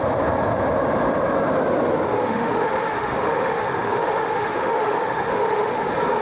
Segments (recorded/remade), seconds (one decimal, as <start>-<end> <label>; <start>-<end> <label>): 0.0-2.1 recorded; 2.1-5.8 remade; 5.8-6.2 recorded